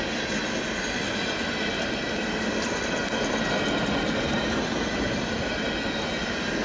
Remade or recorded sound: recorded